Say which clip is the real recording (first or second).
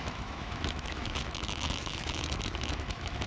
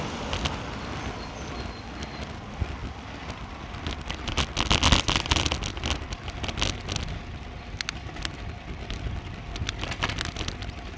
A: second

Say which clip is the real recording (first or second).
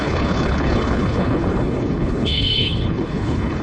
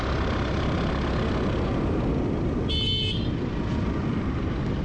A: second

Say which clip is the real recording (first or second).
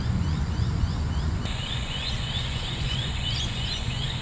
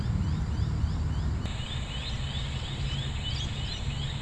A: second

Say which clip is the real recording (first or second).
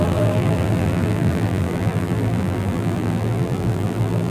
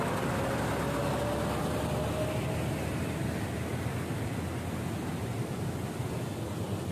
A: second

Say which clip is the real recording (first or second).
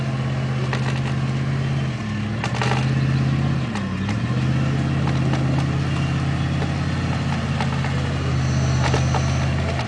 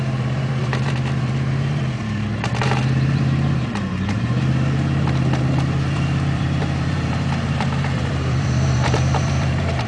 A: first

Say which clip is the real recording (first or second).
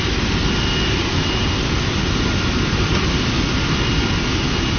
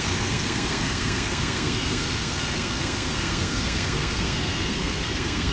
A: first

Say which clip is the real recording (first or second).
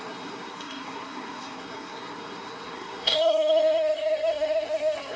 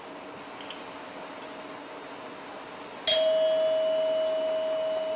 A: second